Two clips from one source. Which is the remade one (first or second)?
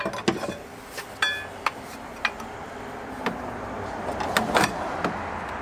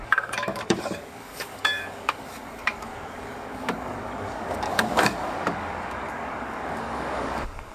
second